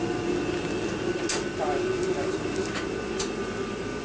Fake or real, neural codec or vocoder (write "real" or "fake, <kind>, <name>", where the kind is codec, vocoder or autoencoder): real